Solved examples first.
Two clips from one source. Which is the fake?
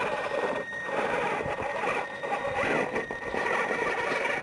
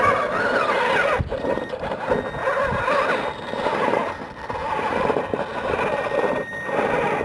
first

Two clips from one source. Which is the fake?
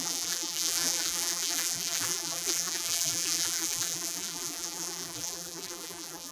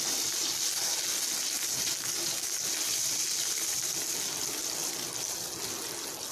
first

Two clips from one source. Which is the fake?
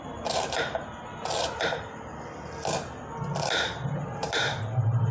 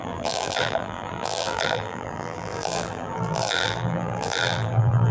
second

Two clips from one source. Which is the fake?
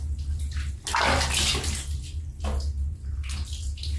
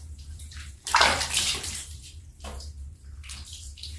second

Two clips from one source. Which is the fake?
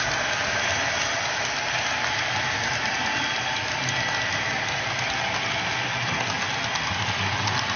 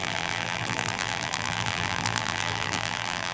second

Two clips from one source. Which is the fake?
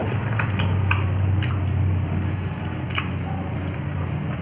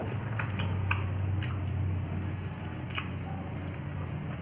first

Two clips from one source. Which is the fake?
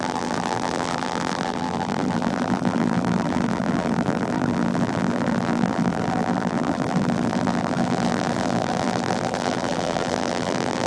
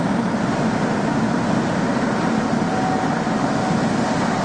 first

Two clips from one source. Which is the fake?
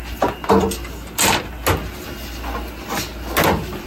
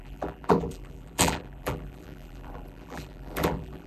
second